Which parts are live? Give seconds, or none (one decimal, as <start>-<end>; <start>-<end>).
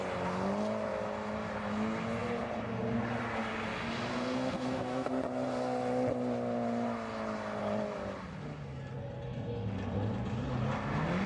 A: 0.0-4.1; 5.1-11.3